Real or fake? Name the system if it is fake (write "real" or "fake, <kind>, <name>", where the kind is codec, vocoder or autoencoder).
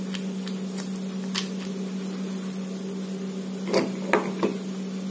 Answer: real